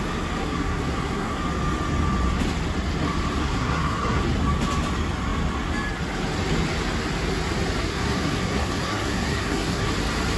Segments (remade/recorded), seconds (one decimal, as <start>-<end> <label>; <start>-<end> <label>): 0.0-0.4 recorded; 0.4-1.4 remade; 1.4-3.4 recorded; 3.4-4.2 remade; 4.2-7.8 recorded; 7.8-9.9 remade; 9.9-10.4 recorded